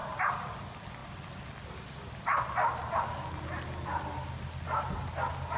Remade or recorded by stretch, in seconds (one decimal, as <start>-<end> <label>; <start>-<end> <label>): 0.0-5.6 recorded